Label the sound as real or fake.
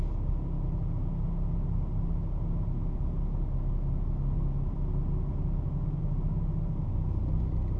real